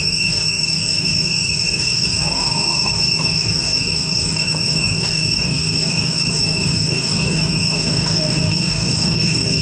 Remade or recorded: remade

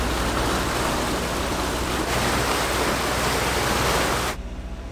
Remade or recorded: recorded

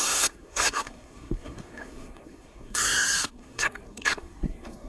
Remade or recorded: remade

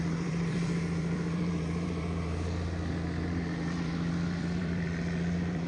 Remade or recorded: remade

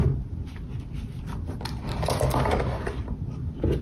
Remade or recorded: recorded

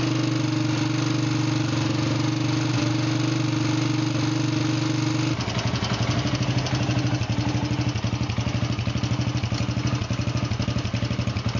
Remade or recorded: recorded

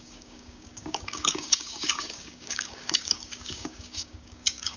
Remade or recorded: remade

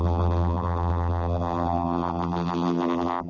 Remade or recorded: remade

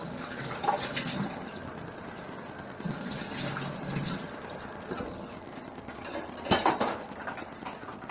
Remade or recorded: recorded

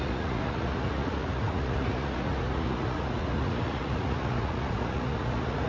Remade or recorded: remade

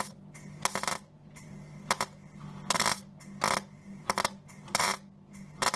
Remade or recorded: recorded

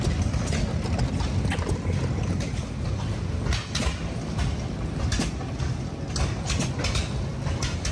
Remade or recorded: recorded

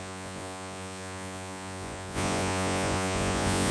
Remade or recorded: remade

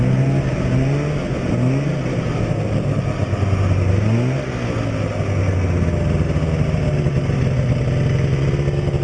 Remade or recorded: recorded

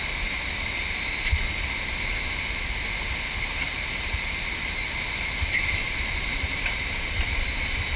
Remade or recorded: recorded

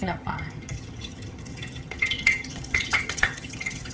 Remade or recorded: remade